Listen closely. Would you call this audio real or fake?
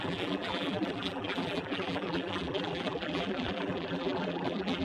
fake